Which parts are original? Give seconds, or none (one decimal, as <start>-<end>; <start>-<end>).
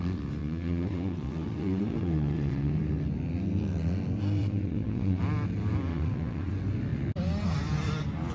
0.0-0.4; 2.7-4.4; 5.2-5.9; 6.5-8.3